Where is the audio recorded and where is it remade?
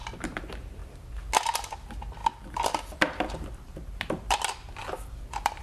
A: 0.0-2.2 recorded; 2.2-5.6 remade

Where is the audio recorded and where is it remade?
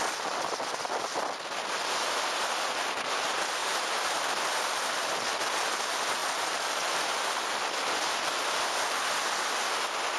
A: 0.0-3.6 recorded; 3.6-5.2 remade; 5.2-6.2 recorded; 6.2-9.0 remade; 9.0-10.2 recorded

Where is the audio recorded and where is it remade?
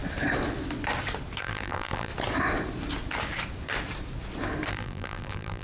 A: 0.0-1.4 recorded; 1.4-2.1 remade; 2.1-4.7 recorded; 4.7-5.6 remade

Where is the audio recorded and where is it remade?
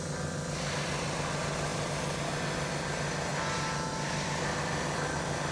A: 0.0-5.5 recorded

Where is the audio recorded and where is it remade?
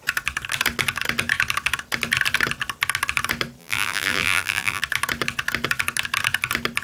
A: 0.0-3.6 recorded; 3.6-4.8 remade; 4.8-6.8 recorded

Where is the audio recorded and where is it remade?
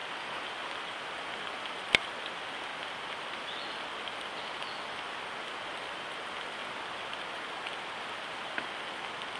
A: 0.0-9.4 recorded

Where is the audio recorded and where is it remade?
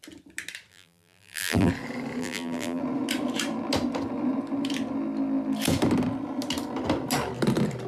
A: 0.0-0.7 recorded; 0.7-1.7 remade; 1.7-2.2 recorded; 2.2-2.8 remade; 2.8-7.9 recorded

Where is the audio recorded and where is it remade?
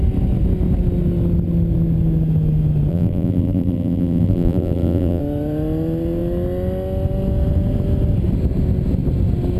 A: 0.0-2.9 recorded; 2.9-5.2 remade; 5.2-9.6 recorded